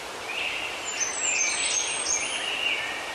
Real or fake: real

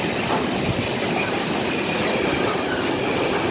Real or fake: real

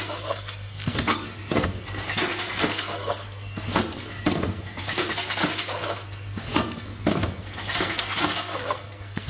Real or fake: fake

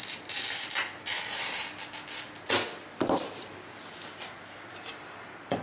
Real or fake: real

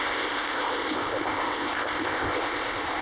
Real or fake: fake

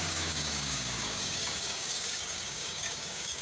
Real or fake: fake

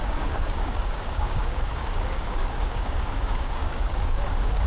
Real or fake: fake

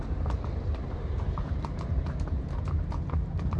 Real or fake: fake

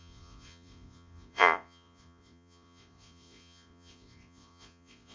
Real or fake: fake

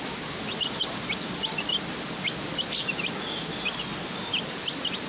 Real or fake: real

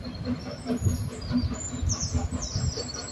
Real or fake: real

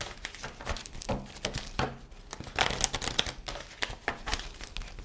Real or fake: real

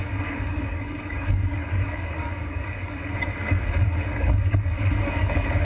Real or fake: fake